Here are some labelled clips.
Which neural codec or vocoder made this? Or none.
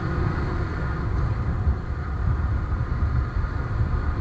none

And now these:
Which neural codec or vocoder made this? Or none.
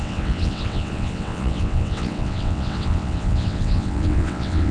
vocoder, WaveNeXt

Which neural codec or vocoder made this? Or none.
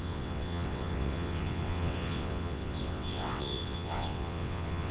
vocoder, WaveNeXt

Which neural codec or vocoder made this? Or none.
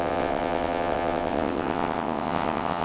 vocoder, WaveNeXt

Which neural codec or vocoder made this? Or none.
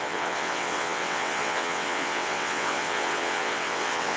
vocoder, WaveNeXt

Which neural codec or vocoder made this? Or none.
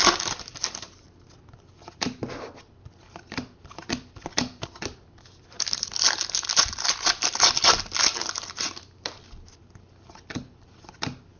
none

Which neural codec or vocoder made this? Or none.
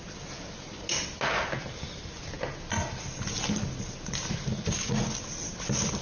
none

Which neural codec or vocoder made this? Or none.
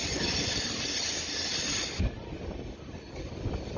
none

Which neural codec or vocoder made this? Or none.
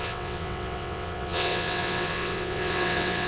vocoder, WaveNeXt